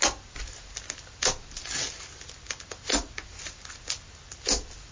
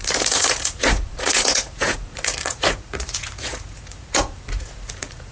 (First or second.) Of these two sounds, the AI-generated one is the second